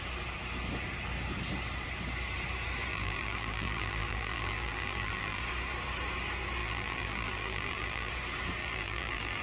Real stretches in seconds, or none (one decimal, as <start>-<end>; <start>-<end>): 0.0-2.9; 5.4-6.6; 8.1-8.6